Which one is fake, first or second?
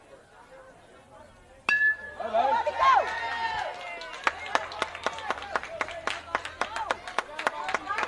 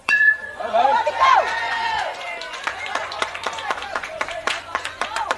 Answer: second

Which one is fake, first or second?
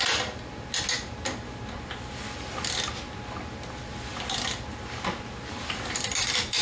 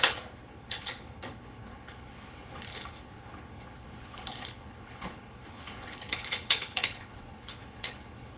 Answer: second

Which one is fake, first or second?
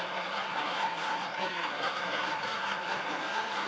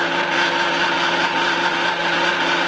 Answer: first